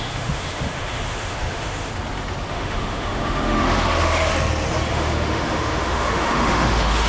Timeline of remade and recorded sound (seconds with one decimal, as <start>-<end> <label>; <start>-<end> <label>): 0.0-1.9 remade; 1.9-2.5 recorded; 2.5-4.3 remade; 4.3-4.9 recorded; 4.9-7.1 remade